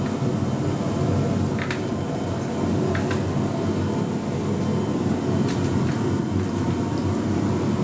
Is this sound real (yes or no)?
yes